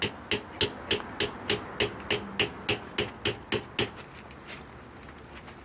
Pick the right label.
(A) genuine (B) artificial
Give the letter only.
A